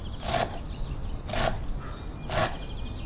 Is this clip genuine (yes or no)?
yes